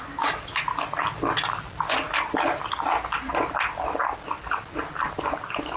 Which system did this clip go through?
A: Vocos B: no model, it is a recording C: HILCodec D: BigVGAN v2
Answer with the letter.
B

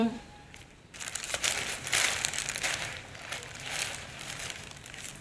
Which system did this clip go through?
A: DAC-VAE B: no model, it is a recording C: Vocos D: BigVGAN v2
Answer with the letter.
D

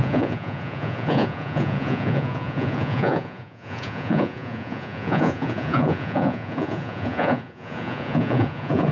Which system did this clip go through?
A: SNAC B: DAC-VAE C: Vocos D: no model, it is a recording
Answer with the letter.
C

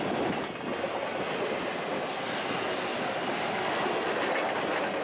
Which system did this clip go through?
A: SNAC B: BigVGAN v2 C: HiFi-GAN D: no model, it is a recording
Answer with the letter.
D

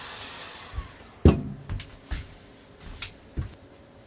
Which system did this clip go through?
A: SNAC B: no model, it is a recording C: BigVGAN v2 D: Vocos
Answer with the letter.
B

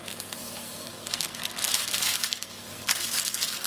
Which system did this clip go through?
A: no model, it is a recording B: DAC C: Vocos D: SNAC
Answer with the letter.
D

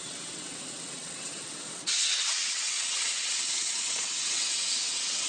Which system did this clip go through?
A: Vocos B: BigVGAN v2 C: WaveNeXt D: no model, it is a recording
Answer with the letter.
C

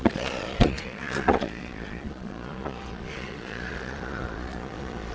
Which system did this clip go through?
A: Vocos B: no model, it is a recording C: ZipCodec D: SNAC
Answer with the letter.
A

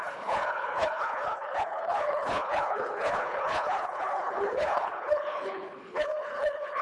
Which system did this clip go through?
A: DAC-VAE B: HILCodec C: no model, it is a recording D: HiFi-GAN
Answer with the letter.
B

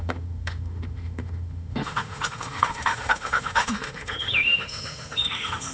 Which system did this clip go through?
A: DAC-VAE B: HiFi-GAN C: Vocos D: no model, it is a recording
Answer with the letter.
A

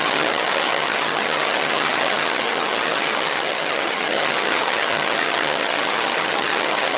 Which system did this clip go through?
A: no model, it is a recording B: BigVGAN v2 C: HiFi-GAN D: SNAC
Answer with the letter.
C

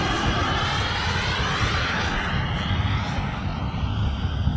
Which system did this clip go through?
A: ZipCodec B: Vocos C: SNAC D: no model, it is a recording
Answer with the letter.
D